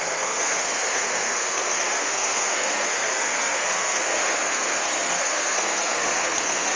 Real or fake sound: fake